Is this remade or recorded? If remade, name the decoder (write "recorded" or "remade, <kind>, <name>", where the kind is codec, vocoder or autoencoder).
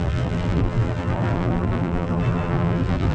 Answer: remade, vocoder, BigVGAN v2